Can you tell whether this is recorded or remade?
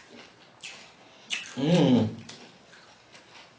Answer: recorded